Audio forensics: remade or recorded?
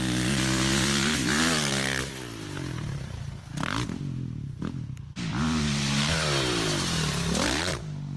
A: recorded